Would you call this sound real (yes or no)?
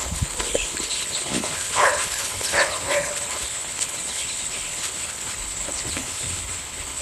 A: no